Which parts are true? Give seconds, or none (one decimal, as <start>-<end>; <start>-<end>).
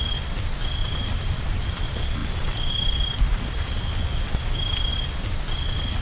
0.0-0.8; 1.4-6.0